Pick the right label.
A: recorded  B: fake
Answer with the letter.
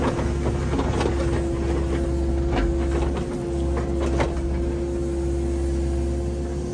A